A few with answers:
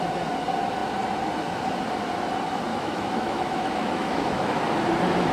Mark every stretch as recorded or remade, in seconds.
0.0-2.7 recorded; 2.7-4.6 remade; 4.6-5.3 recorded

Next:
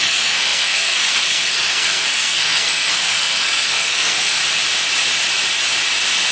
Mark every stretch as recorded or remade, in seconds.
0.0-4.4 remade; 4.4-6.3 recorded

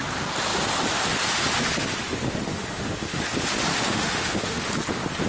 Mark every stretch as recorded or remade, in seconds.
0.0-2.5 recorded; 2.5-3.2 remade; 3.2-3.7 recorded; 3.7-4.7 remade; 4.7-5.3 recorded